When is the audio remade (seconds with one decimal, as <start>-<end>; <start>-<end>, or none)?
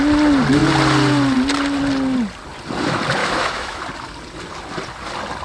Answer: 3.2-3.8